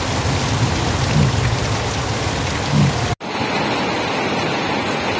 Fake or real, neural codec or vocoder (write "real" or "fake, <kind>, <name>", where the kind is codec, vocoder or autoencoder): real